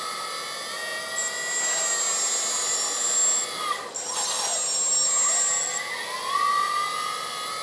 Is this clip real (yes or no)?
yes